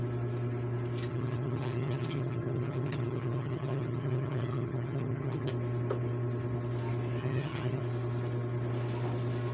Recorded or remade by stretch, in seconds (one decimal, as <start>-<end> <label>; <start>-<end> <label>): 0.0-1.1 recorded; 1.1-5.5 remade; 5.5-7.2 recorded; 7.2-7.8 remade; 7.8-9.5 recorded